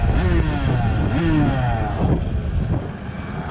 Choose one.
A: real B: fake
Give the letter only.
A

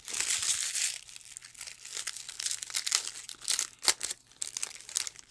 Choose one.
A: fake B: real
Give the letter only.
B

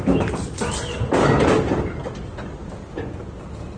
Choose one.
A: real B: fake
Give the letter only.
A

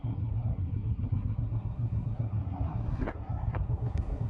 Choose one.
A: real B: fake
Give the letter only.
B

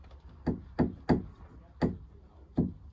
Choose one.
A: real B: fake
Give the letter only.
A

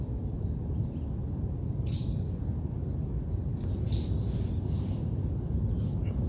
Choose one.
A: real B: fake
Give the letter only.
A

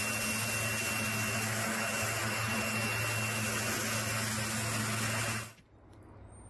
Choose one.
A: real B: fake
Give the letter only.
A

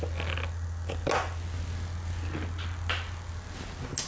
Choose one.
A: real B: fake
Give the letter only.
A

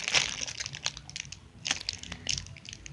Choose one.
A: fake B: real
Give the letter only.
B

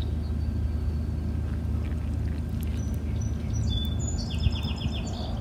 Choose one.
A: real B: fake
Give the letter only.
A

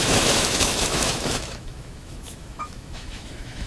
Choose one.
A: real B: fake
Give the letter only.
B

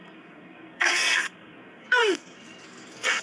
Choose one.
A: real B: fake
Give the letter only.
B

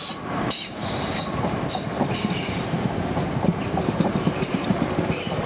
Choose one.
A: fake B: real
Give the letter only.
A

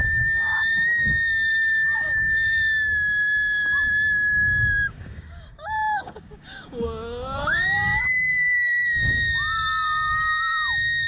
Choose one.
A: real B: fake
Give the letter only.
B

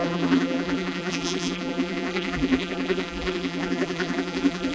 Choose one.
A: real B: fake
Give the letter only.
B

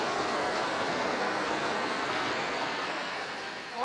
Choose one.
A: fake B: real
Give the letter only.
A